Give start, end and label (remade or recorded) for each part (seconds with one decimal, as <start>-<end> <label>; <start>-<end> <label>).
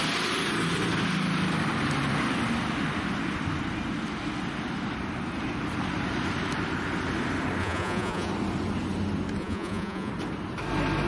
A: 0.0-7.6 recorded; 7.6-8.3 remade; 8.3-9.4 recorded; 9.4-10.1 remade; 10.1-11.1 recorded